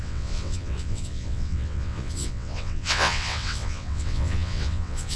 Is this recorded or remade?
remade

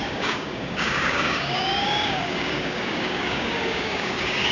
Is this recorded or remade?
remade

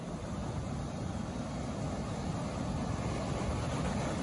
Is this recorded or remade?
recorded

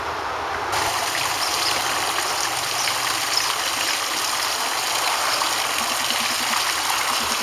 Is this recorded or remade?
recorded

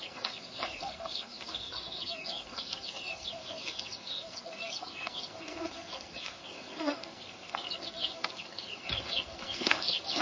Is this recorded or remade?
remade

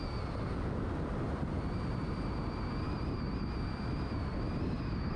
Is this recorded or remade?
recorded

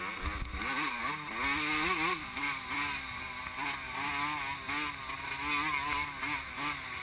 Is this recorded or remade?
recorded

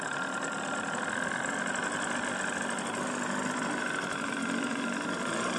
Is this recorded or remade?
recorded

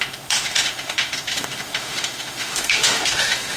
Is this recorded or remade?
remade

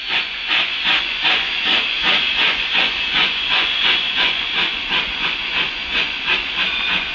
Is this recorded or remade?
remade